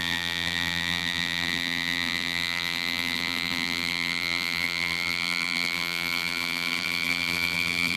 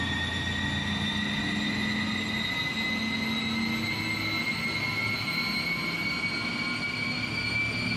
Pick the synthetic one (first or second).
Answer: first